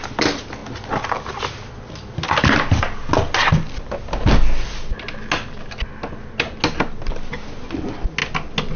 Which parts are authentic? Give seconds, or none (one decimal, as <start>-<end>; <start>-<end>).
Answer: 0.0-8.8